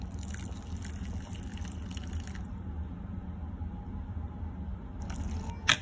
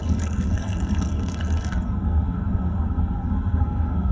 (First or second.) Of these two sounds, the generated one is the second